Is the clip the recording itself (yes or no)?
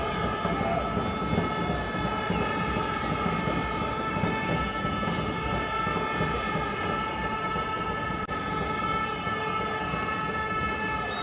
yes